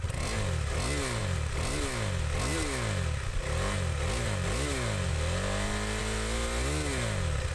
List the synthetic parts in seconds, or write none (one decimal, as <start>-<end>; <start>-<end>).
none